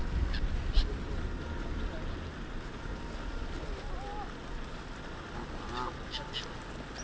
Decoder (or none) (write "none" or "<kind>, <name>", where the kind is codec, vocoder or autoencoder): none